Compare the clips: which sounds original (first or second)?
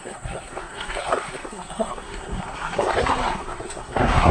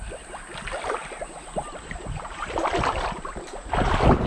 second